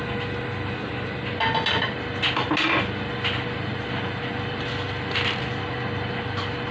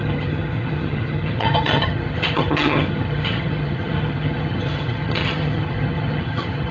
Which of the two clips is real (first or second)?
first